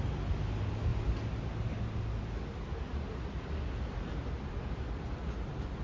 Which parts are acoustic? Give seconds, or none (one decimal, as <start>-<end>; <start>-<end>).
0.0-5.8